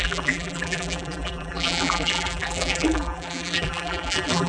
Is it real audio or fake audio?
fake